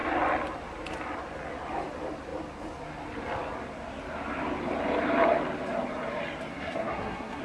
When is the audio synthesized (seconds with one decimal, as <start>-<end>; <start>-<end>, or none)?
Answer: 6.5-7.4